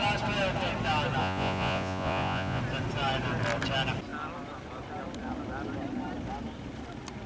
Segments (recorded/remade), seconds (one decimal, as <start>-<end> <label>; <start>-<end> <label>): 0.0-1.2 recorded; 1.2-2.6 remade; 2.6-7.3 recorded